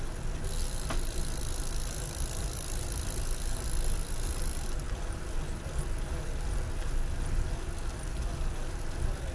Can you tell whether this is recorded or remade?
recorded